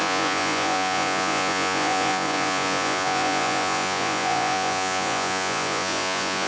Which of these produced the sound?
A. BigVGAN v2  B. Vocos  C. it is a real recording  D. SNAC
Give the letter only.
B